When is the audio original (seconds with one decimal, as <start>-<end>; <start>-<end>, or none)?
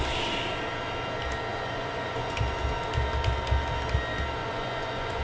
0.0-1.5; 2.3-4.4